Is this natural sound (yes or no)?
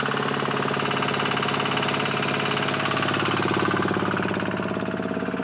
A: yes